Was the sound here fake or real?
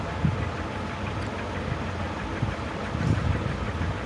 real